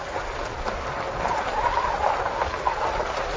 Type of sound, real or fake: real